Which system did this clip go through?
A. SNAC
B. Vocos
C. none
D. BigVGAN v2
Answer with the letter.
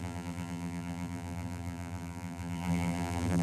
D